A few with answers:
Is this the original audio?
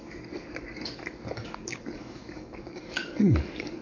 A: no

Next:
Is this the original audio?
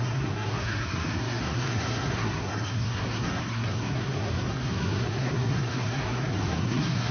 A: no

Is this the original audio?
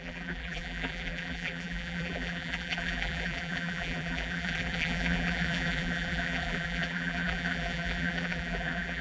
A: no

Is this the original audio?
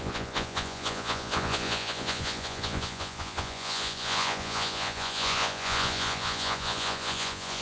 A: no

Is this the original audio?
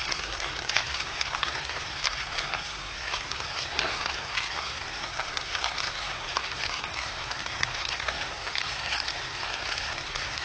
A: no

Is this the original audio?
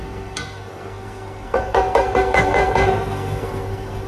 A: no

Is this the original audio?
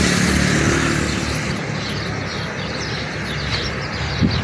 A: yes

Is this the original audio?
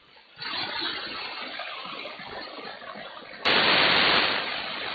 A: yes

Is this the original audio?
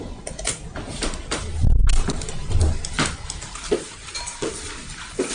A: yes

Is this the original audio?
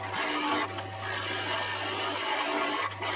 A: yes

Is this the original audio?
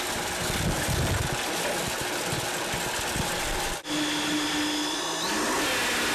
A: yes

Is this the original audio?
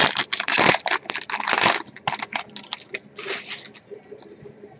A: yes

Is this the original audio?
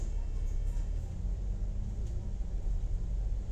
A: yes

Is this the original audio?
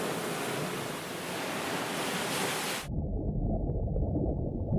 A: yes